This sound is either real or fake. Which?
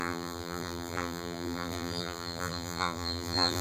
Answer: fake